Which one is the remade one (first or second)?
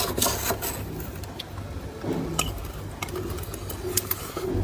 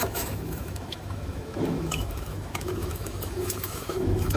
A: second